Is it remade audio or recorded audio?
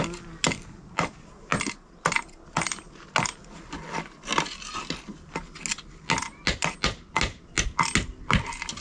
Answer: recorded